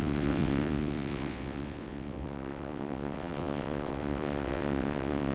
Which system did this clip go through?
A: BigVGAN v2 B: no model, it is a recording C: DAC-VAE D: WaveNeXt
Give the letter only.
D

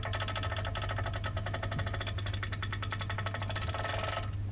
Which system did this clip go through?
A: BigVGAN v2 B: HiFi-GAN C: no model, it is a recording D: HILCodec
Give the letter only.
C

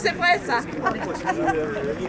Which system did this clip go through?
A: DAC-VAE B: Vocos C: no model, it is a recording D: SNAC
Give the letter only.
C